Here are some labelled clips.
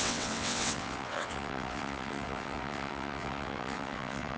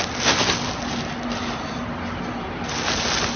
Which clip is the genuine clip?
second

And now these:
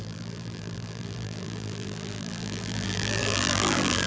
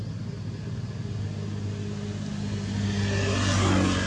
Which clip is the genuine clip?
second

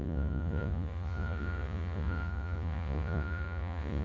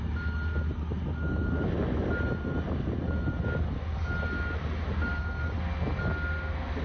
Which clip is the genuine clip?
second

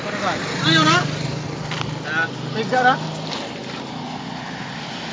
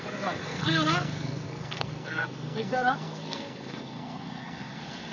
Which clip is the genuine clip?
first